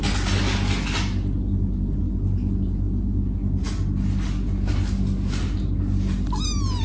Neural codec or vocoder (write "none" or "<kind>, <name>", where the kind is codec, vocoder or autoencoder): none